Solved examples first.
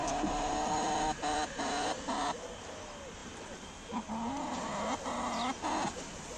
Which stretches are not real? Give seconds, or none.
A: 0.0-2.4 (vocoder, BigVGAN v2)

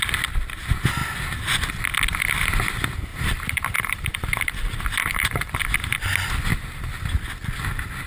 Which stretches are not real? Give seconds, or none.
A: 3.1-5.5 (vocoder, BigVGAN v2); 6.5-7.0